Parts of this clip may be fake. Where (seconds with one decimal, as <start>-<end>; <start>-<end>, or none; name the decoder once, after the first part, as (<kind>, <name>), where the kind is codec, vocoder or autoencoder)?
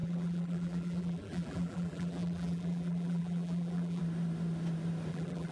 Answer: 0.0-4.0 (vocoder, BigVGAN v2); 5.1-5.5